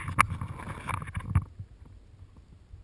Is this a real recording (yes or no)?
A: yes